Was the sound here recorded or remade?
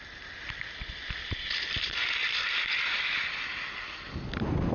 recorded